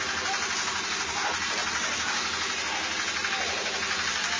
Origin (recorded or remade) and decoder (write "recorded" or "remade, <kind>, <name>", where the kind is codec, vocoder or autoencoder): recorded